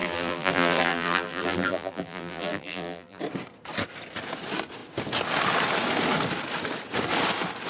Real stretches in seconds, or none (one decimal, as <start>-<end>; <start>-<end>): 3.2-7.7